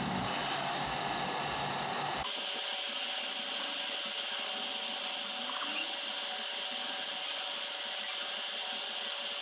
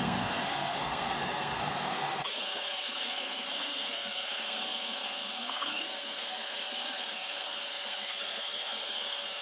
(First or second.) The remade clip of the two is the second